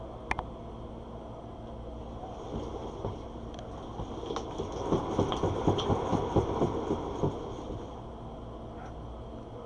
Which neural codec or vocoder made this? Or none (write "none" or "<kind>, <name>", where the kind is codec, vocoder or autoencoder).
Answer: none